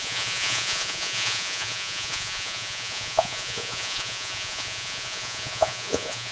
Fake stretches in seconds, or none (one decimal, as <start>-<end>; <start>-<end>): 0.0-6.3